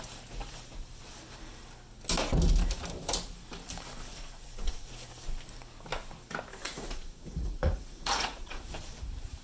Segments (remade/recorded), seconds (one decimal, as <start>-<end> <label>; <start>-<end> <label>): 0.0-4.2 recorded; 4.2-4.9 remade; 4.9-6.6 recorded; 6.6-8.6 remade; 8.6-9.4 recorded